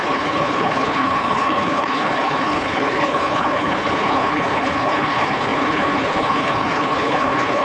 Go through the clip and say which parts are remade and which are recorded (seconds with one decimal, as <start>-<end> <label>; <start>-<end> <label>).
0.0-7.6 remade